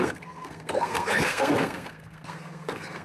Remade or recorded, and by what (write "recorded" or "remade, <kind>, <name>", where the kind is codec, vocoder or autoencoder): remade, codec, SNAC